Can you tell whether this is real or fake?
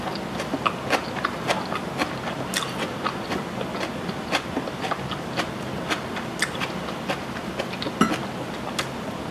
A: real